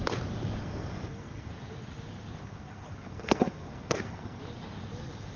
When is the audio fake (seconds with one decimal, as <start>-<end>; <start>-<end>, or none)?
0.6-1.5; 2.4-4.4

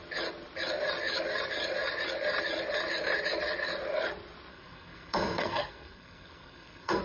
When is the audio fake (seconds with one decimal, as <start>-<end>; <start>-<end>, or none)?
4.5-7.0